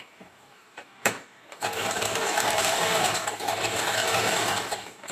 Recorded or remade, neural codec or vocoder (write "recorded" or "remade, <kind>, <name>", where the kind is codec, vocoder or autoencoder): remade, codec, DAC